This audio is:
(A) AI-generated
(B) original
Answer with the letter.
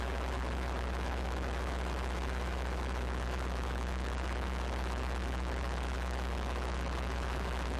A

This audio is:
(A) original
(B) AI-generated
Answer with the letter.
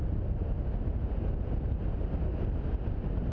A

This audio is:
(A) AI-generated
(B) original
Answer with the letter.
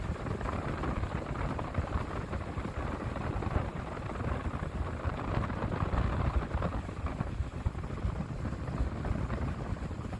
B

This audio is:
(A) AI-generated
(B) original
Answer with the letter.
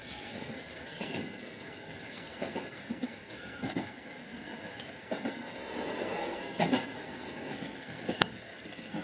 A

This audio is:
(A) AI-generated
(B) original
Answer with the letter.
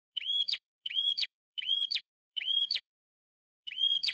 A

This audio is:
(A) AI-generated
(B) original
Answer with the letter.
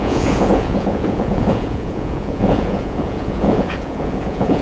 A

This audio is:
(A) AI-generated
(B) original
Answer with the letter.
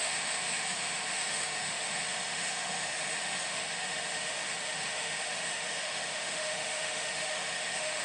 A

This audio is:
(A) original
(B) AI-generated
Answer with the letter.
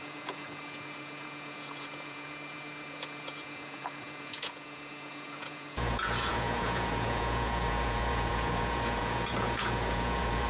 B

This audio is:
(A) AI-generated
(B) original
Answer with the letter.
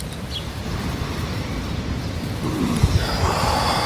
A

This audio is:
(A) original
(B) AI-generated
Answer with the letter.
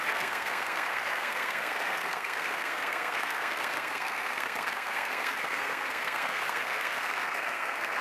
B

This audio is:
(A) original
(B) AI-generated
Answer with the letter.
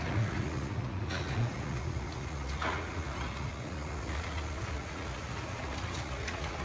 B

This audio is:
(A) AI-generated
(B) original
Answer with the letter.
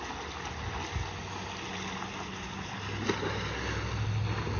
B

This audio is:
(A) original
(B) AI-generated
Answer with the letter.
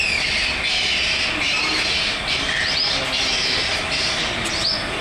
A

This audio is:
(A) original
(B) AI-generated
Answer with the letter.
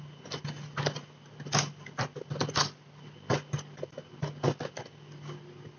A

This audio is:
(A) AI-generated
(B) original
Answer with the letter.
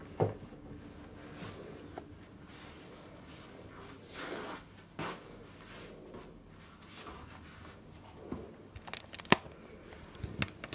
B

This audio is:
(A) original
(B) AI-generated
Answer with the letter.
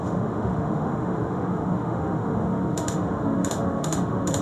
B